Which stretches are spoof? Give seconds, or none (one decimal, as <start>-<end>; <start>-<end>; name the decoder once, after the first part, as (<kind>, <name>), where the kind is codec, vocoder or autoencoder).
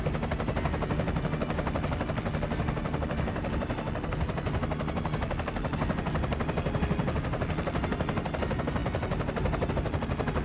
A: none